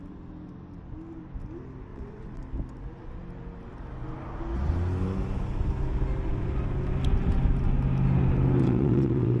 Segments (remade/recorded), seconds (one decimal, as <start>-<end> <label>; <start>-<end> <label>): 0.0-1.9 recorded; 1.9-2.4 remade; 2.4-8.6 recorded; 8.6-9.4 remade